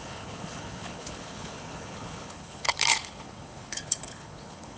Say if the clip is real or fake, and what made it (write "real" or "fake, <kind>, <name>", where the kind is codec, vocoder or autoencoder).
fake, codec, HILCodec